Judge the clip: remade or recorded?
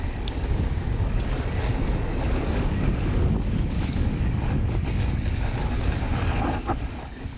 remade